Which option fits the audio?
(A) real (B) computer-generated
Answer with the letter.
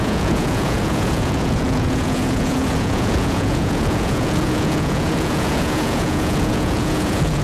B